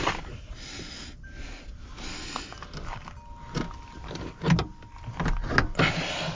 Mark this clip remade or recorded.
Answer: recorded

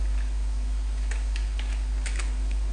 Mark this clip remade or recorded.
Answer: remade